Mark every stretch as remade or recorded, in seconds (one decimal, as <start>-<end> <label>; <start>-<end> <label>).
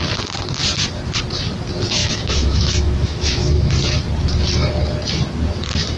0.0-2.0 recorded; 2.0-3.7 remade; 3.7-6.0 recorded